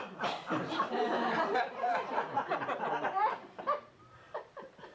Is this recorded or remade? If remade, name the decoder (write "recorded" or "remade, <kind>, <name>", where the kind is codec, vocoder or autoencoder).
remade, vocoder, BigVGAN v2